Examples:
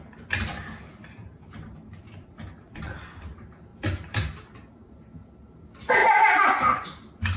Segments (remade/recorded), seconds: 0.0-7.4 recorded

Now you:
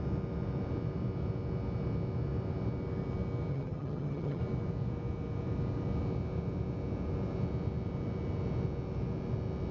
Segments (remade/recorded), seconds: 0.0-3.5 recorded; 3.5-4.4 remade; 4.4-9.7 recorded